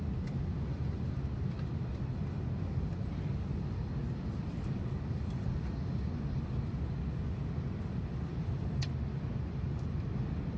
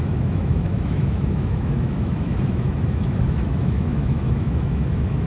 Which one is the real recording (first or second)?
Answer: first